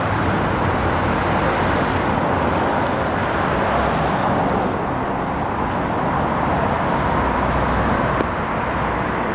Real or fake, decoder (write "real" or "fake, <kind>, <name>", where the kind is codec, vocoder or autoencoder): real